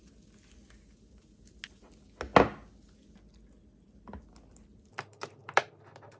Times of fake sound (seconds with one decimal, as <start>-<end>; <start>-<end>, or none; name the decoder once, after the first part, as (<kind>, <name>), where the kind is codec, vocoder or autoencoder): none